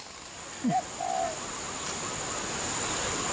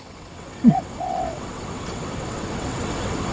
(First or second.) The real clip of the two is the first